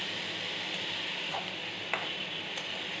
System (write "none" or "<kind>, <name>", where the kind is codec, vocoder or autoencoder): none